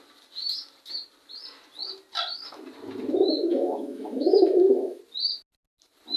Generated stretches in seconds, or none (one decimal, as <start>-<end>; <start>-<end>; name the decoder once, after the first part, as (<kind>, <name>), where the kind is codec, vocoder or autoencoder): 3.5-5.0 (autoencoder, DAC-VAE)

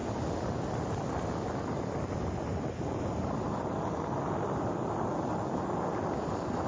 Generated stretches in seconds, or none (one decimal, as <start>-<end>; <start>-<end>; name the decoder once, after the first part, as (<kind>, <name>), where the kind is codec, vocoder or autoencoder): none

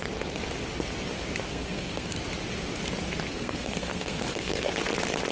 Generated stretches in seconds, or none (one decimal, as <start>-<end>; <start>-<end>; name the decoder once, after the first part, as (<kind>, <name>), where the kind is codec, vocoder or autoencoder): 1.5-2.2 (codec, SNAC); 3.3-4.7

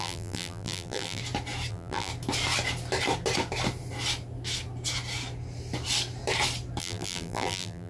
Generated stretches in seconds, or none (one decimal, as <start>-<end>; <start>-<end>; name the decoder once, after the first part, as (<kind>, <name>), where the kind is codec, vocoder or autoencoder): 0.0-1.2 (vocoder, BigVGAN v2); 1.7-2.1; 6.8-7.9

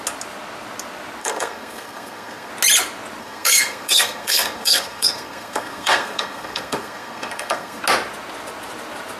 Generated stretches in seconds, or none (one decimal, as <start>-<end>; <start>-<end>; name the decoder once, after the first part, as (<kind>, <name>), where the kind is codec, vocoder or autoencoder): 1.2-2.5 (codec, SNAC); 3.2-7.8

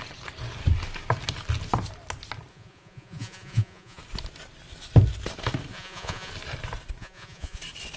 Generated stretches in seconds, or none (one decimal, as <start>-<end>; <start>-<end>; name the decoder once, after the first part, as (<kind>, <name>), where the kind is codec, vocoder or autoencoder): 2.5-4.0 (vocoder, Vocos); 5.7-6.3; 7.0-7.6

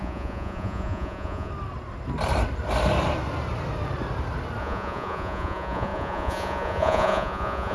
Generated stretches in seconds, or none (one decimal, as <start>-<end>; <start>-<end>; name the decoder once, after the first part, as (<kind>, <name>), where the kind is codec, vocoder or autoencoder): 0.0-1.5 (vocoder, Vocos); 4.6-7.7

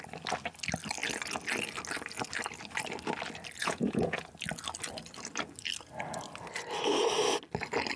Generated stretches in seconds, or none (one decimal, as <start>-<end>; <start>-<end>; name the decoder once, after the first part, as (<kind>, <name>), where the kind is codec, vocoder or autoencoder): 3.6-4.3 (vocoder, Vocos)